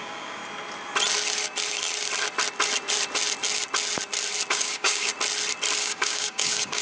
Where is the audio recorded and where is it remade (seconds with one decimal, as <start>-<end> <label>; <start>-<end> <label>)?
0.0-0.4 remade; 0.4-4.5 recorded; 4.5-5.1 remade; 5.1-5.8 recorded; 5.8-6.8 remade